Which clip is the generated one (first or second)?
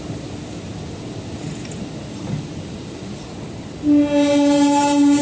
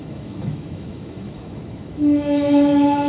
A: second